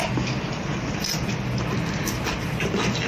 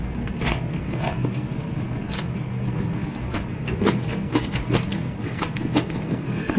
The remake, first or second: second